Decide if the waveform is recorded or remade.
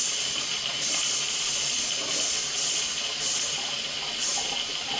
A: recorded